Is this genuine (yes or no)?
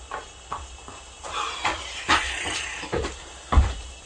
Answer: yes